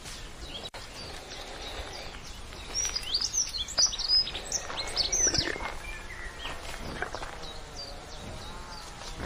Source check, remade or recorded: recorded